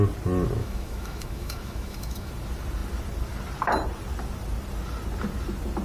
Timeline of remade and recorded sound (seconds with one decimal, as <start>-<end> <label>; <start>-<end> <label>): 0.0-0.6 recorded; 0.6-2.3 remade; 2.3-5.8 recorded